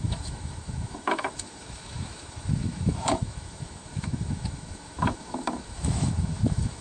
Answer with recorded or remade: remade